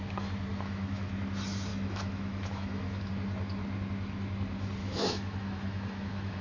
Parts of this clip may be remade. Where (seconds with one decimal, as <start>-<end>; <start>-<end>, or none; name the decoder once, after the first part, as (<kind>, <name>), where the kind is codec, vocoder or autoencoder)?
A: 0.5-1.1 (autoencoder, DAC-VAE); 1.7-3.1; 4.8-6.4